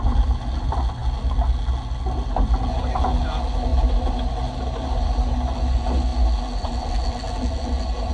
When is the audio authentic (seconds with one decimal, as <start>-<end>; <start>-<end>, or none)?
0.0-8.1